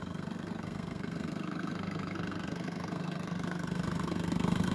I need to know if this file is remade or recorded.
remade